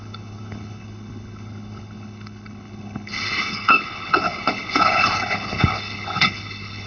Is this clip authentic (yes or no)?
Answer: no